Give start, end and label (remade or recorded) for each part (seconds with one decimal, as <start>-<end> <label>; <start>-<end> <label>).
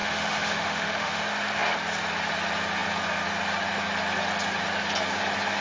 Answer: 0.0-1.2 remade; 1.2-5.6 recorded